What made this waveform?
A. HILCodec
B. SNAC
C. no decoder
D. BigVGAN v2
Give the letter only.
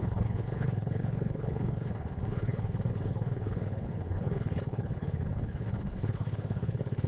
A